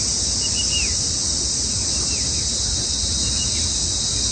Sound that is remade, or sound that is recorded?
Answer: recorded